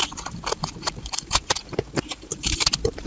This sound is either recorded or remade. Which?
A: remade